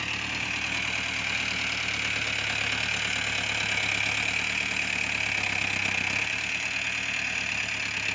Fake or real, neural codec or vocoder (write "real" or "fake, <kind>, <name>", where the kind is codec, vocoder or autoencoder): real